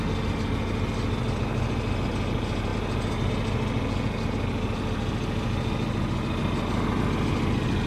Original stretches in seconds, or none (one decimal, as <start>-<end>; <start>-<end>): 0.0-7.9

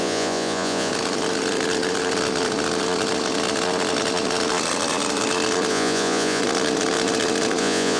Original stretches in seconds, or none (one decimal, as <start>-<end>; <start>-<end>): 0.9-5.7; 6.4-7.6

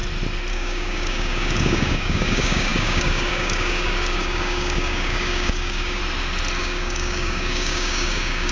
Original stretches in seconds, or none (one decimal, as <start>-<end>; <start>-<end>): 0.0-0.5; 6.0-6.6

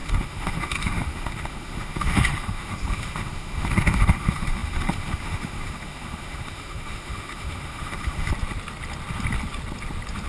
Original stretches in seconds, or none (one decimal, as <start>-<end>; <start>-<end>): 8.3-10.3

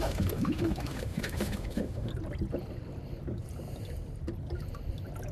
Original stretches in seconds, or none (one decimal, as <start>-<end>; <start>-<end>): 2.1-5.3

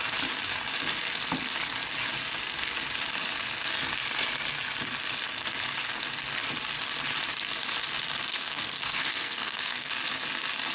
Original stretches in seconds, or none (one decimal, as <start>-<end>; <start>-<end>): 0.0-8.3; 9.9-10.7

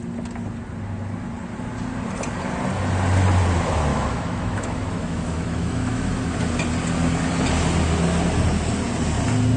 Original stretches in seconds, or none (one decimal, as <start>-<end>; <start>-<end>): 0.0-3.9; 6.1-9.6